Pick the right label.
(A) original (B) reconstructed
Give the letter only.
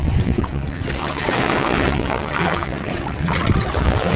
B